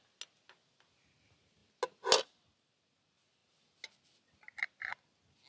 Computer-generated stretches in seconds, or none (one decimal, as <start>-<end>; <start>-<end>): none